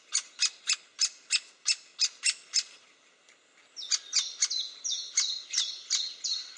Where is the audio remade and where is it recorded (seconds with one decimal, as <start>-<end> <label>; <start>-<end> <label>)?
0.0-5.8 recorded; 5.8-6.6 remade